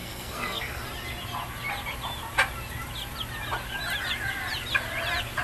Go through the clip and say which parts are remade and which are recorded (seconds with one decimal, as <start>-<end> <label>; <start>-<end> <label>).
0.0-0.8 remade; 0.8-5.4 recorded